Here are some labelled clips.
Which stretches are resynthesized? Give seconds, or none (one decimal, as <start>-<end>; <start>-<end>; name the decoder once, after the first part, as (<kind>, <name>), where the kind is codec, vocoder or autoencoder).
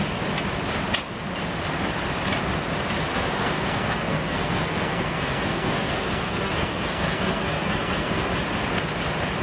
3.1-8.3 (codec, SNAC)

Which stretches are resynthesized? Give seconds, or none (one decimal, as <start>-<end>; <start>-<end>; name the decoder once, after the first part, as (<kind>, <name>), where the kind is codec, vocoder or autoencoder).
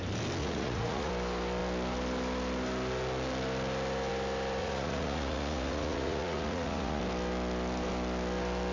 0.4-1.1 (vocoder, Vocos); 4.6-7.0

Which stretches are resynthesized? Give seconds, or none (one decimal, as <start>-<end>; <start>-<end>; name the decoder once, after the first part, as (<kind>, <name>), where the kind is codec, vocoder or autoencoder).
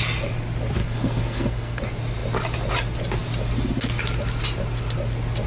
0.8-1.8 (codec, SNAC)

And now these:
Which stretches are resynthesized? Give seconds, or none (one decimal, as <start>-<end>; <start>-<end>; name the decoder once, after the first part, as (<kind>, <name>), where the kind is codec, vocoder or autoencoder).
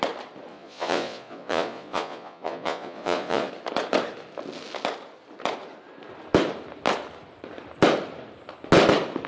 0.5-3.5 (vocoder, Vocos)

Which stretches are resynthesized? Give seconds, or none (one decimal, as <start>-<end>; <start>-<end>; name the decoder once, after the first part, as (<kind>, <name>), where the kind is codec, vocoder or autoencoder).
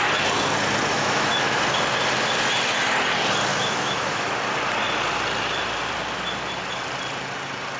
0.9-1.6 (autoencoder, DAC-VAE); 3.5-4.3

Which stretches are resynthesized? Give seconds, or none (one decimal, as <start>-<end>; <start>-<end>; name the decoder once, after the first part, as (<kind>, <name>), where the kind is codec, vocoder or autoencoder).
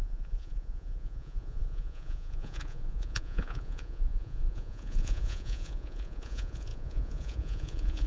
0.0-8.1 (vocoder, Vocos)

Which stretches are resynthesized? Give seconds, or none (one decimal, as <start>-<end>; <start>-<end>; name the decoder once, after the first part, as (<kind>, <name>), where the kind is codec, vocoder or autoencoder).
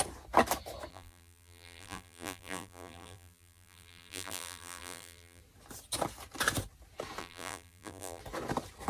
0.9-5.4 (vocoder, BigVGAN v2); 7.2-8.2